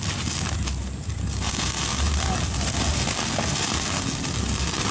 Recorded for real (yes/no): yes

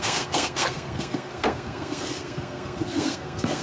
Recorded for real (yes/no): no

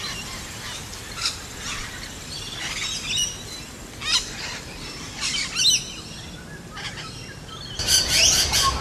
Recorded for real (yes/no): yes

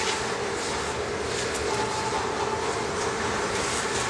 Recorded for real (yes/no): yes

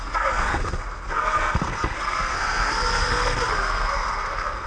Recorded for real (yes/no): no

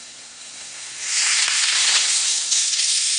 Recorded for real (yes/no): no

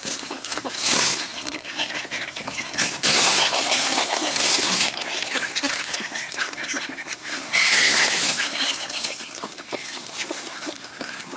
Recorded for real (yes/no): no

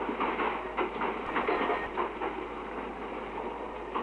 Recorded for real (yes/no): yes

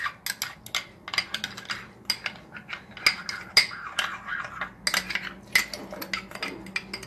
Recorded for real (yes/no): yes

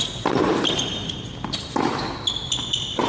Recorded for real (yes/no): yes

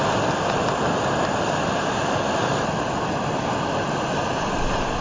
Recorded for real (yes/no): yes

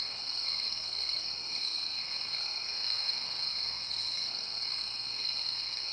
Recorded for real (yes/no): no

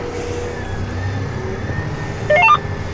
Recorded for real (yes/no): yes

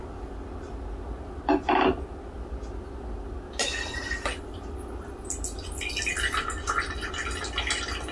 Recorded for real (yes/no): yes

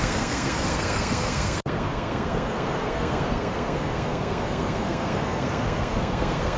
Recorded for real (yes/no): no